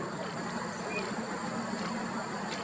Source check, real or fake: real